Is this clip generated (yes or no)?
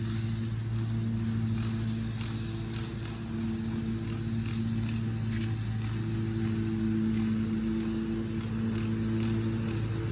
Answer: no